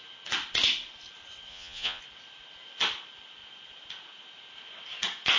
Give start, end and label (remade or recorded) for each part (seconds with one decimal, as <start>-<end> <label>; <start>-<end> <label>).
0.0-1.5 recorded; 1.5-2.0 remade; 2.0-5.4 recorded